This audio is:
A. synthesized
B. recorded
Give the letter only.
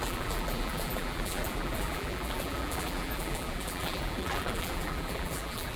A